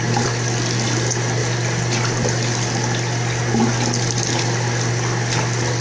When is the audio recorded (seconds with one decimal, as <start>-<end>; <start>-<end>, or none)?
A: 0.0-5.8